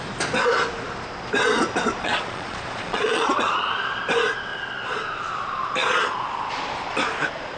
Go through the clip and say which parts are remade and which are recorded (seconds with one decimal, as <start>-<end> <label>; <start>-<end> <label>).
0.0-2.0 recorded; 2.0-4.0 remade; 4.0-4.5 recorded; 4.5-5.0 remade; 5.0-5.8 recorded; 5.8-6.5 remade; 6.5-7.6 recorded